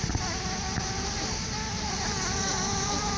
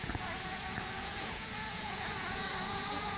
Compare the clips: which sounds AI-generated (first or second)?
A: second